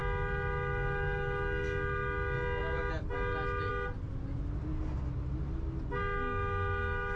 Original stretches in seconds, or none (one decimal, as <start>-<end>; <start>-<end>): 0.0-7.2